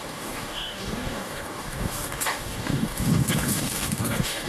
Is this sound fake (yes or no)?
yes